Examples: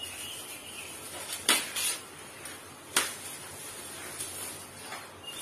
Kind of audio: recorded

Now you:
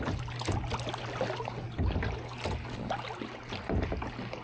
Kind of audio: recorded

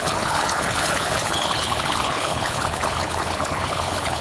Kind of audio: remade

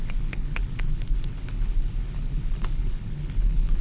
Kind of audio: remade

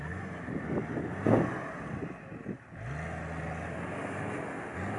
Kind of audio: recorded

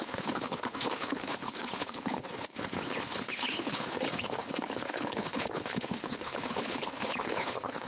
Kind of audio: remade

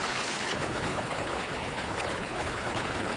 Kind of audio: remade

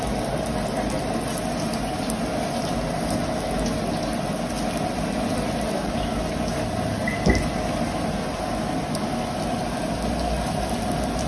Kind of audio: recorded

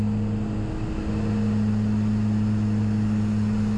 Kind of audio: recorded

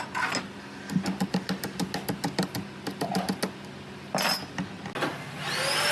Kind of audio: recorded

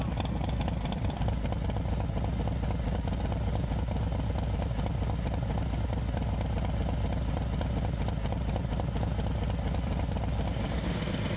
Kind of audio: recorded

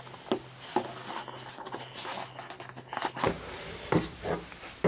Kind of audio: recorded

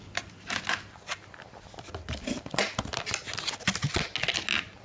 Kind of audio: recorded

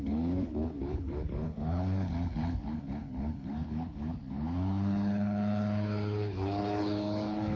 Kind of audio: remade